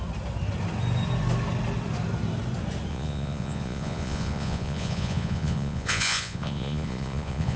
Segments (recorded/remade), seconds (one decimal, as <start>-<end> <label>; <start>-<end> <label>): 0.0-2.9 recorded; 2.9-7.6 remade